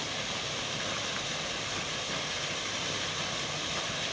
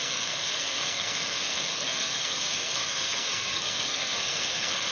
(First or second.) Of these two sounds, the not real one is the second